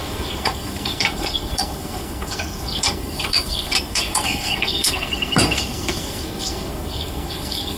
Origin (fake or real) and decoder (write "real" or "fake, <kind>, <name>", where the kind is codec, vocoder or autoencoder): fake, codec, SNAC